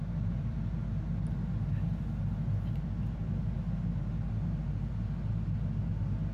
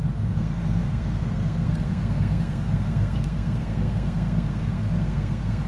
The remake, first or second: second